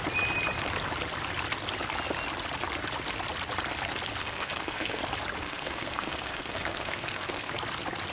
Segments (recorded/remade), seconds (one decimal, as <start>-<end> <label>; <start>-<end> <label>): 0.0-4.2 recorded; 4.2-5.0 remade; 5.0-5.4 recorded; 5.4-7.5 remade; 7.5-8.1 recorded